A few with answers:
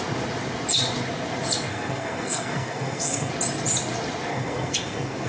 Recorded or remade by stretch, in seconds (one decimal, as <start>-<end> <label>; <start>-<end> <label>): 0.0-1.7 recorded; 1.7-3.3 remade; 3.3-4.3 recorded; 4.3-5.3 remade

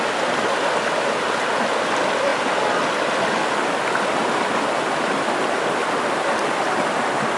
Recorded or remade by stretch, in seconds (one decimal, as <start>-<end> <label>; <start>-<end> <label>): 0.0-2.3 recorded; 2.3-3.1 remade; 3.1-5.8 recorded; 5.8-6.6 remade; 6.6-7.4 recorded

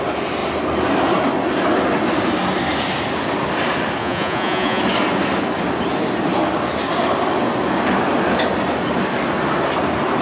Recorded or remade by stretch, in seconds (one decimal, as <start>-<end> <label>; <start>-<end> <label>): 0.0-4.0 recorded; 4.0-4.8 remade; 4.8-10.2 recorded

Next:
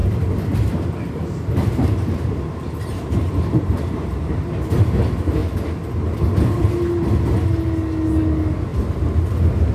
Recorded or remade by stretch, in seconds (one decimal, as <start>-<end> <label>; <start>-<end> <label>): 0.0-4.4 remade; 4.4-9.7 recorded

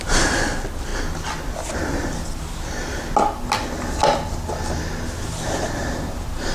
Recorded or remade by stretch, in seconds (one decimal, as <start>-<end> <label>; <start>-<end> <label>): 0.0-6.5 recorded

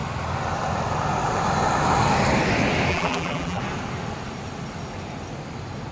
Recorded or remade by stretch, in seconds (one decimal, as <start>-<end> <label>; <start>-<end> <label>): 0.0-2.9 recorded; 2.9-3.6 remade; 3.6-5.9 recorded

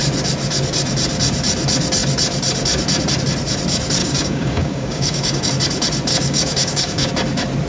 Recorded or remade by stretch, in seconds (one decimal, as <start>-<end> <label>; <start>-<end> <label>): 0.0-4.0 recorded; 4.0-5.5 remade; 5.5-6.1 recorded; 6.1-7.1 remade; 7.1-7.7 recorded

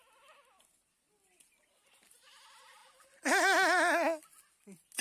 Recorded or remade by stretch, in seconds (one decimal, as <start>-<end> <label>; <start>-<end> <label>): 0.0-5.0 recorded